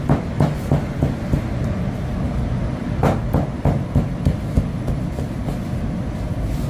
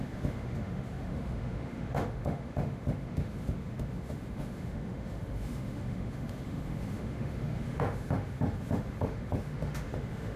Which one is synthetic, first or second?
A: second